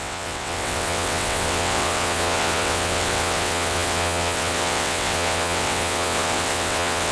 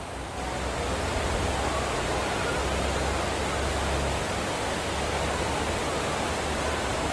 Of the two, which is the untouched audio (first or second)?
second